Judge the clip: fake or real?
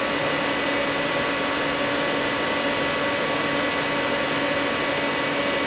real